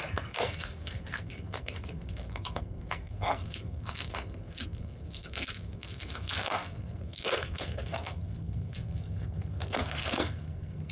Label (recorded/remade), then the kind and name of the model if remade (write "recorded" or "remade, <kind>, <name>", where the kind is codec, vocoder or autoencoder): remade, codec, SNAC